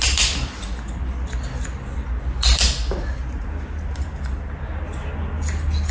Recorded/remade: recorded